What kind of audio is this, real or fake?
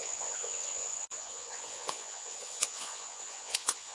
fake